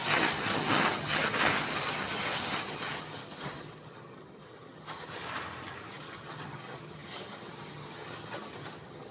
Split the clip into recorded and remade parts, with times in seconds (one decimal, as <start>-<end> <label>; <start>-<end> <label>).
0.0-5.2 remade; 5.2-5.9 recorded; 5.9-9.1 remade